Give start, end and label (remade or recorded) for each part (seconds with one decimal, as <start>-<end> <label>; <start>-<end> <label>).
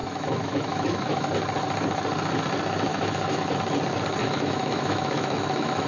0.0-1.3 remade; 1.3-2.9 recorded; 2.9-3.6 remade; 3.6-4.2 recorded; 4.2-5.9 remade